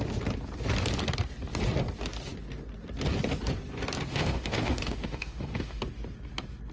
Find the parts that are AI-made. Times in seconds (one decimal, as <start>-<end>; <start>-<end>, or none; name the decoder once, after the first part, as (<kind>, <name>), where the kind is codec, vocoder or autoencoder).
4.1-5.8 (autoencoder, DAC-VAE)